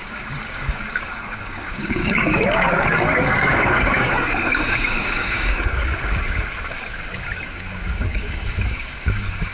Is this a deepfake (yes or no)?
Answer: yes